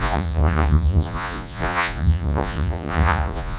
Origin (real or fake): fake